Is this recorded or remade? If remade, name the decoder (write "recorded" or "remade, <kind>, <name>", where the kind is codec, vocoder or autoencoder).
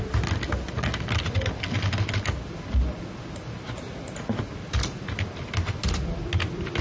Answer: recorded